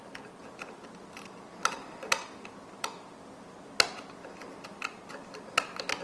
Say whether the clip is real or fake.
real